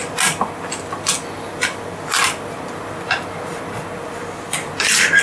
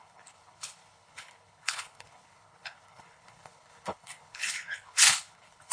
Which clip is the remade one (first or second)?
second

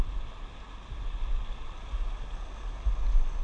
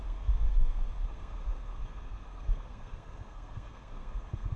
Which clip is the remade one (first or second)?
second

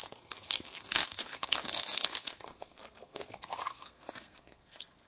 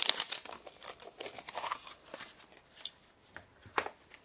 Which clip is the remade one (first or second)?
first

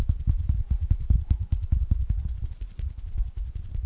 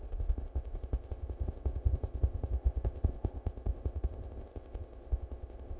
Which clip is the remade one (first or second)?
second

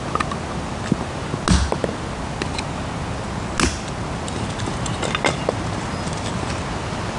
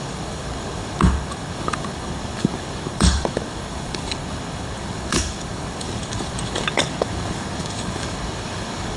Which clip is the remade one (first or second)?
second